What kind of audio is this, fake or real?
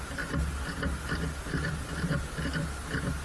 real